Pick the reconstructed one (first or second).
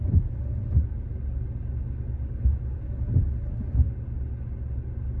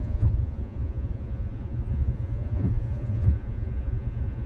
second